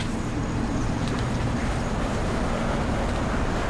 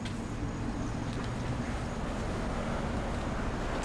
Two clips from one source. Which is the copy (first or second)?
first